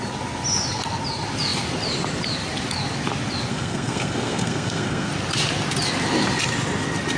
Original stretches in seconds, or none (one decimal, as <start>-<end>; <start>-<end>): 0.0-3.5; 5.1-7.2